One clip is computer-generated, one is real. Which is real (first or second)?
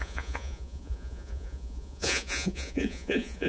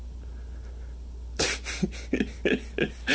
second